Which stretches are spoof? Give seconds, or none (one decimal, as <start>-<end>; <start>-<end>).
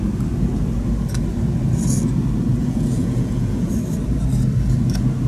2.6-3.7